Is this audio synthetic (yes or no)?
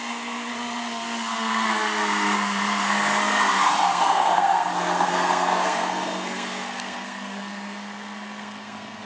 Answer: yes